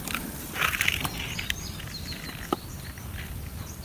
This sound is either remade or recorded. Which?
remade